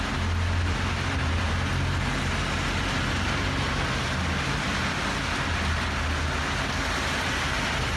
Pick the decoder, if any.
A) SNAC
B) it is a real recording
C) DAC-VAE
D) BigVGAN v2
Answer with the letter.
B